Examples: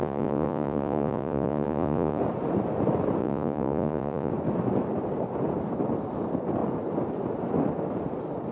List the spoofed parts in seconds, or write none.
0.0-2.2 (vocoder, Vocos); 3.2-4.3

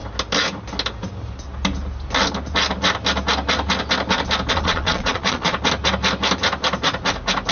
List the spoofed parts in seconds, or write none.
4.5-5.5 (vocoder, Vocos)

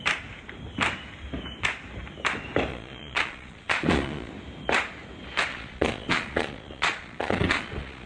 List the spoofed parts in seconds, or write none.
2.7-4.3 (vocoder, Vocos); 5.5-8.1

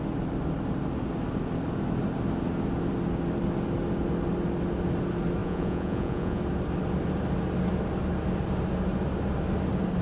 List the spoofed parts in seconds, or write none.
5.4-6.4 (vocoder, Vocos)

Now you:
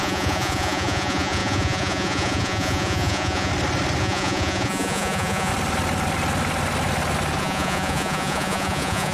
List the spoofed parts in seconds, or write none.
0.0-3.5 (vocoder, Vocos); 4.0-5.5; 7.4-9.1

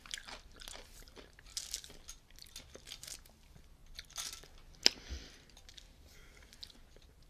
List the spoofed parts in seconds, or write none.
none

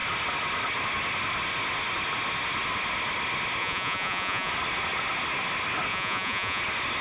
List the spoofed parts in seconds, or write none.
3.6-4.5 (vocoder, Vocos); 5.9-6.6

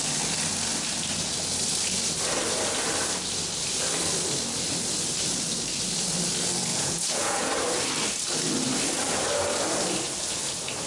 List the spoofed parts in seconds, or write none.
6.7-7.5 (vocoder, Vocos)